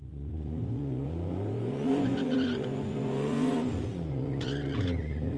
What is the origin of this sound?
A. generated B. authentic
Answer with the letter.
A